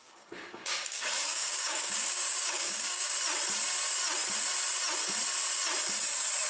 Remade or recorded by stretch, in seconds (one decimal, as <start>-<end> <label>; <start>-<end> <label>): 0.0-3.1 remade; 3.1-6.5 recorded